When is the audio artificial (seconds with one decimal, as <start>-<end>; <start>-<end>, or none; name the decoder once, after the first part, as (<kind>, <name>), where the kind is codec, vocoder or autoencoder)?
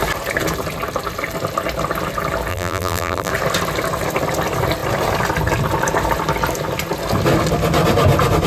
2.5-3.3 (vocoder, BigVGAN v2)